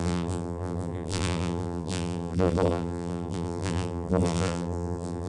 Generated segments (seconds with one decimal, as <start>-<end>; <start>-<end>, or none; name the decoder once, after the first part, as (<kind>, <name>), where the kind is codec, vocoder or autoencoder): 0.0-5.3 (vocoder, BigVGAN v2)